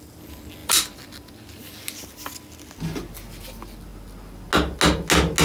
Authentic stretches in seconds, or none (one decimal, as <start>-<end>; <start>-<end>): 0.0-0.6; 1.7-5.4